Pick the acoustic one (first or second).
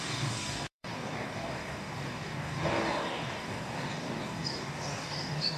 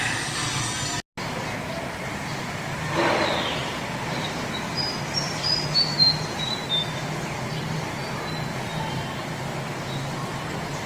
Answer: second